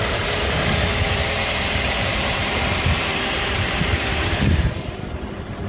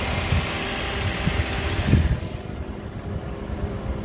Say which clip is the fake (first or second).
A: first